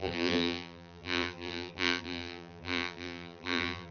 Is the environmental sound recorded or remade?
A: remade